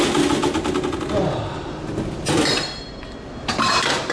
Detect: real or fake real